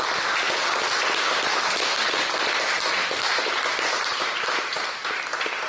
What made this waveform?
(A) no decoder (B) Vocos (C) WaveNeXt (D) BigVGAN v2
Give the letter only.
A